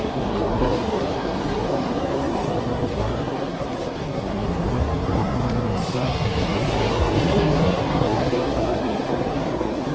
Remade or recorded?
remade